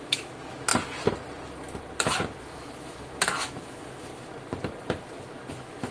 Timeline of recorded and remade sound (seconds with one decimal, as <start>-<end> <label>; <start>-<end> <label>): 0.0-0.7 remade; 0.7-2.4 recorded; 2.4-4.1 remade; 4.1-5.5 recorded; 5.5-5.9 remade